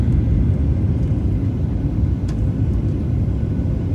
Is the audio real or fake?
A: real